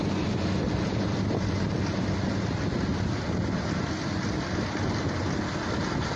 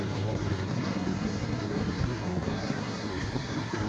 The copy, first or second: second